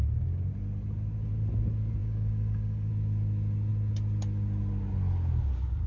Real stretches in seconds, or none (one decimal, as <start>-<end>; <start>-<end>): 0.0-2.0; 2.9-5.9